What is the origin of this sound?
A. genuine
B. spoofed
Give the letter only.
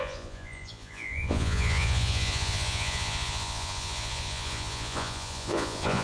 B